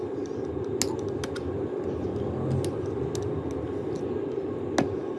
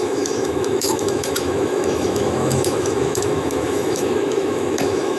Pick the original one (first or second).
first